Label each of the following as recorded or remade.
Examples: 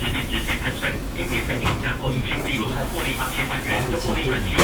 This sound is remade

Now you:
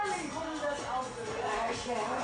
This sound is recorded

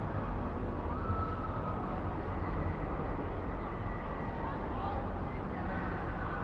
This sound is recorded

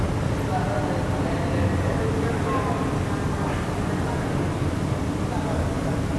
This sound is recorded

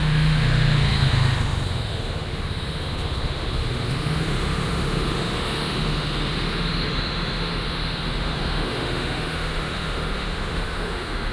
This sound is remade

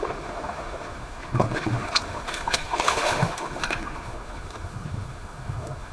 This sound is remade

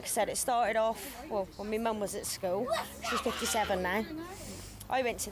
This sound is recorded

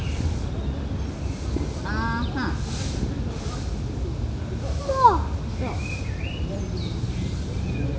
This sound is recorded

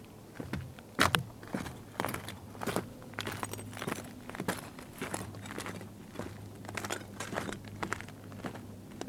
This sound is recorded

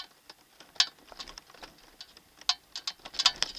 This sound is recorded